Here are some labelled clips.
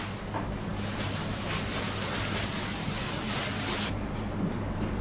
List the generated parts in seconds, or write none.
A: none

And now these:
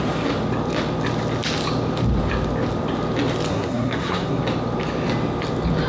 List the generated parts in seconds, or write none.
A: 3.5-4.4 (codec, SNAC)

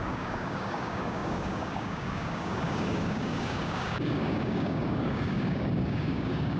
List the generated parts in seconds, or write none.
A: 0.0-6.6 (codec, DAC)

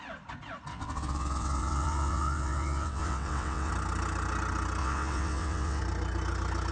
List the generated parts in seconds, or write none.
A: 0.7-3.7 (vocoder, WaveNeXt); 4.8-5.8